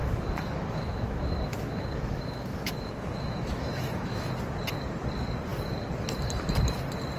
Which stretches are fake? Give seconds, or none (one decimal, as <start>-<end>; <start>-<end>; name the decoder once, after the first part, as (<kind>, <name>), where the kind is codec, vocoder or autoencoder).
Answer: 0.0-4.3 (autoencoder, DAC-VAE)